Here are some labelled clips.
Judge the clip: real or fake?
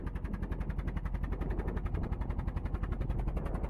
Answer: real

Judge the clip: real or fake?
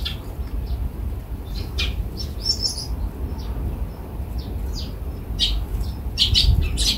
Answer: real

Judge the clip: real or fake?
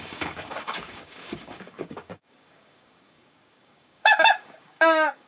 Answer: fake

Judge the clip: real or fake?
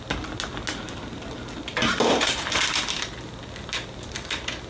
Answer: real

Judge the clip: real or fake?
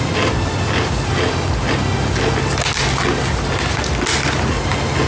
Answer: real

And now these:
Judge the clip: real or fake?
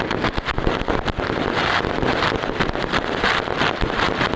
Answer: real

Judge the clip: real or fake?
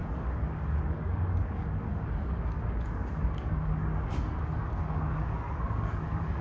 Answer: fake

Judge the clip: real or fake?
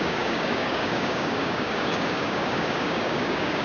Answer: fake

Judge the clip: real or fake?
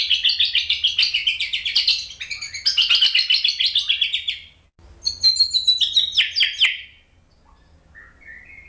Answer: real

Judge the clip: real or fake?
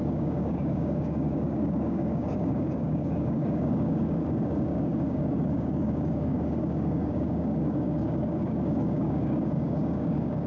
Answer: fake